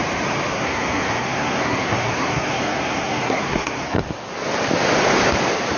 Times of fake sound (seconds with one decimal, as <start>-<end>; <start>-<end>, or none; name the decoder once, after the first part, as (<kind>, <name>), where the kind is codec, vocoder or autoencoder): 0.5-4.0 (codec, SNAC)